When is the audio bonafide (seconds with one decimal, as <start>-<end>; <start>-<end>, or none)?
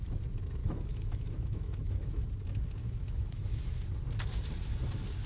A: 0.0-0.6; 2.2-2.8; 3.7-5.3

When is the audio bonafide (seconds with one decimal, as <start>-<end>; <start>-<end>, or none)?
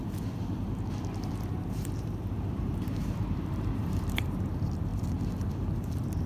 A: 4.9-5.7